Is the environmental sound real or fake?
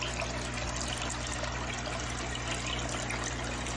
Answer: real